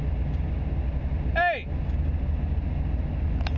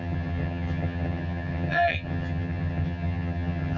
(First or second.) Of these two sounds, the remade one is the second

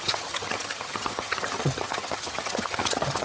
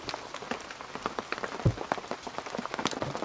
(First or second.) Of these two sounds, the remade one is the first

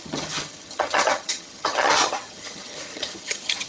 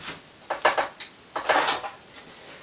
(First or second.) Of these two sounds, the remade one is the first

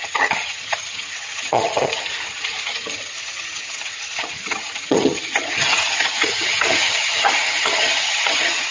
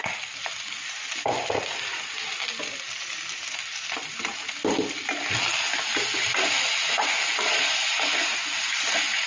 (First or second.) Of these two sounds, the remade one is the first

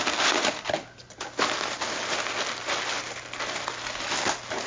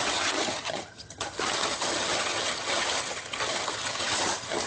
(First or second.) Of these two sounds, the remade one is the second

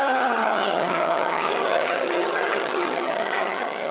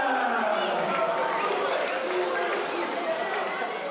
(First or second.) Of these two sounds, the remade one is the first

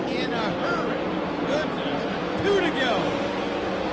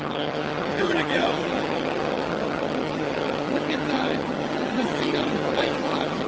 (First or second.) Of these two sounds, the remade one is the second